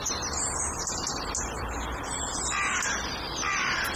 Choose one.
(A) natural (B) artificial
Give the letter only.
A